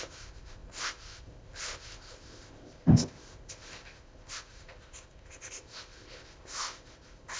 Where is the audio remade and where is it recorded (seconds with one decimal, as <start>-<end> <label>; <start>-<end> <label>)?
0.0-7.4 remade